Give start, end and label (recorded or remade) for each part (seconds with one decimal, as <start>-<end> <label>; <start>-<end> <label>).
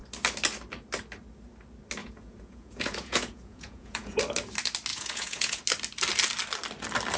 0.0-2.0 recorded; 2.0-4.2 remade; 4.2-4.9 recorded; 4.9-5.6 remade; 5.6-7.2 recorded